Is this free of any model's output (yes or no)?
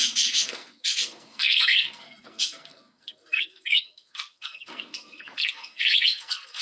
no